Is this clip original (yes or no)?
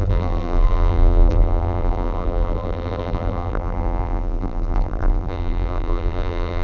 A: no